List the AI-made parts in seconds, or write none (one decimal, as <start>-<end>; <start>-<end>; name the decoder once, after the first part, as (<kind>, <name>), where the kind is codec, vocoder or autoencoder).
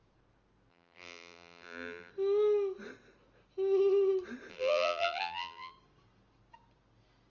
0.7-2.1 (vocoder, BigVGAN v2); 4.5-5.7